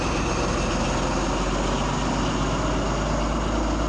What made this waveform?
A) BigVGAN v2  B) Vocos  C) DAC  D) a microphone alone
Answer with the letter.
D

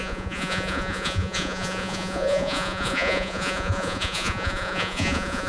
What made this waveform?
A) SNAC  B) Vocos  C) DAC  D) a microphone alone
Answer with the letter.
B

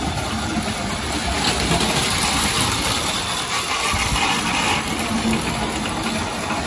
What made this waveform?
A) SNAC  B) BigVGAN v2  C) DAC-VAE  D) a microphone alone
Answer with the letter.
B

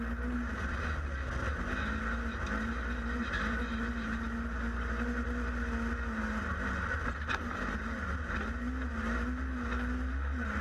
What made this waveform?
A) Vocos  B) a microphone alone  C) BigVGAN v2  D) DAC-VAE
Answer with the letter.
B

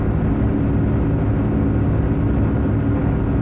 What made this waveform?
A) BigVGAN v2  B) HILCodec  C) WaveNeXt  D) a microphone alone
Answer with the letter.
D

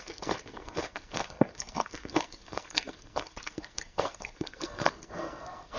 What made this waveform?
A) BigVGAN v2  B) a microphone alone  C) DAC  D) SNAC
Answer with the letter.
D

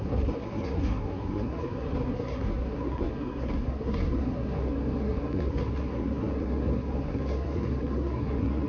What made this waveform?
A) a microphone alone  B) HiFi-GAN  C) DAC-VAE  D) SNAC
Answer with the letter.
D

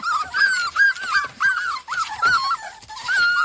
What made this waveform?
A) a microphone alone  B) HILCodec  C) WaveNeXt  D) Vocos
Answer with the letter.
A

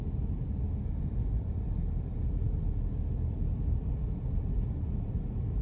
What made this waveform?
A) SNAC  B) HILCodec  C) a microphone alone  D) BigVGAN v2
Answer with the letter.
C